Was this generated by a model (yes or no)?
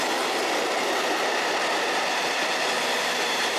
no